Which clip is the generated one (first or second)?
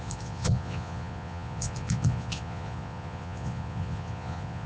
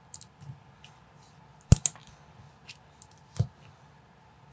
first